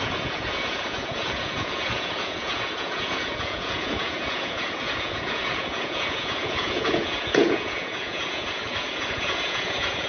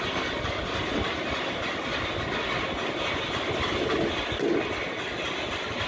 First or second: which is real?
second